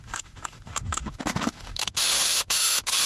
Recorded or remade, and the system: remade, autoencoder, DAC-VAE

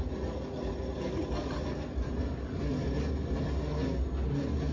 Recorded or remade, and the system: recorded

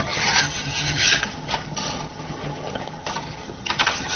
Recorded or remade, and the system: remade, vocoder, HiFi-GAN